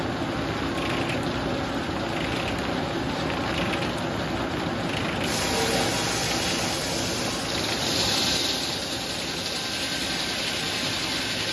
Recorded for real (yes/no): yes